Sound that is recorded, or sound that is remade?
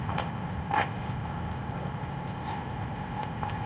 remade